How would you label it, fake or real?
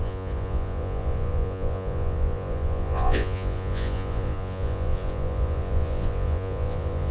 fake